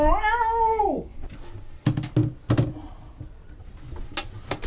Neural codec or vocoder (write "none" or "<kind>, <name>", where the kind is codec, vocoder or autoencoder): none